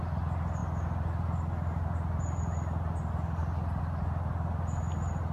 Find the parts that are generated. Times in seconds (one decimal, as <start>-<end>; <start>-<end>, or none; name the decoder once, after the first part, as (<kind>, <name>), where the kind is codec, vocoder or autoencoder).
none